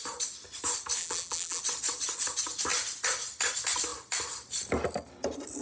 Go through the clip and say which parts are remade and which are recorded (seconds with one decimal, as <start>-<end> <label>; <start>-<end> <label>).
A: 0.0-1.0 recorded; 1.0-1.6 remade; 1.6-5.6 recorded